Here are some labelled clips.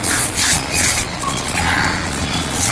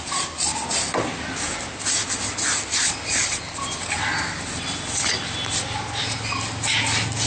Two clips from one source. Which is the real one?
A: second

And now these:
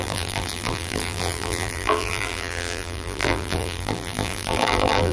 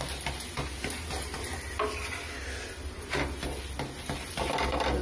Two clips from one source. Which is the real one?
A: second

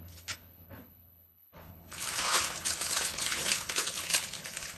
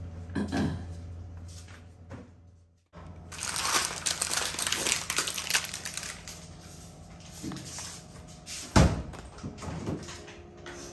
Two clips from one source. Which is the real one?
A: second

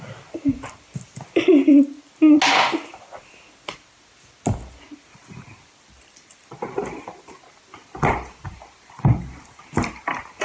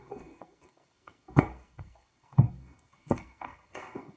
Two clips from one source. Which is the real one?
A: first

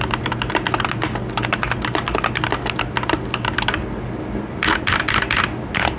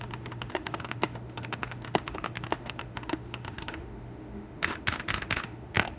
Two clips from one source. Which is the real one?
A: first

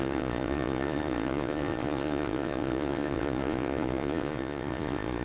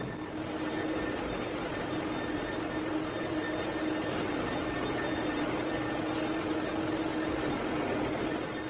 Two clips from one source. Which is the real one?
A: second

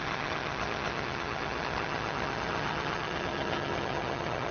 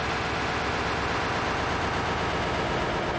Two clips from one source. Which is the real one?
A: second